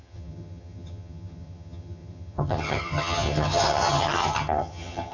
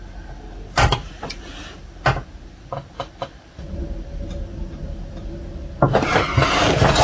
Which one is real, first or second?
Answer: second